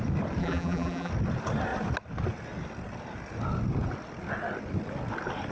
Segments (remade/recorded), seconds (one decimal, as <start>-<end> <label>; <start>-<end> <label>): 0.0-0.4 recorded; 0.4-1.1 remade; 1.1-5.5 recorded